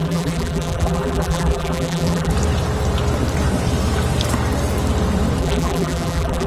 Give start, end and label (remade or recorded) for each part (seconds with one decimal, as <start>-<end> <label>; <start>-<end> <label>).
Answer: 0.0-2.3 remade; 2.3-5.4 recorded; 5.4-6.5 remade